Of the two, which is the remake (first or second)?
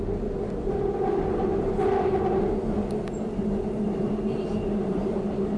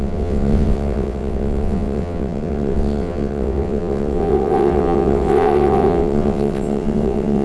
second